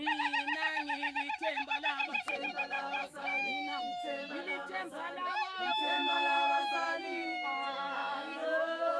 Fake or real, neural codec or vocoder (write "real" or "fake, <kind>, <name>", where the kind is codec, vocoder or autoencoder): fake, autoencoder, DAC-VAE